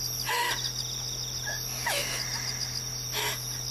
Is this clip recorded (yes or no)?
yes